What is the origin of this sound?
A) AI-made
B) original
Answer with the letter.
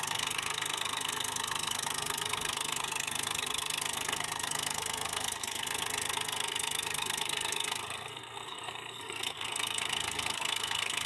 A